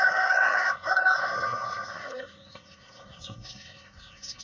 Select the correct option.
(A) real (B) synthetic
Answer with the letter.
B